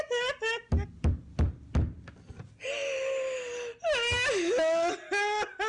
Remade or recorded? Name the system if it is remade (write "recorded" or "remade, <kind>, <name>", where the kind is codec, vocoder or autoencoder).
recorded